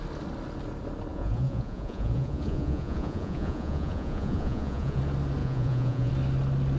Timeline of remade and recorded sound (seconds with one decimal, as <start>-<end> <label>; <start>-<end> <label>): 0.0-1.1 recorded; 1.1-5.0 remade; 5.0-5.4 recorded; 5.4-6.1 remade; 6.1-6.8 recorded